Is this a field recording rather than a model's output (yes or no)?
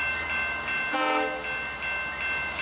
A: yes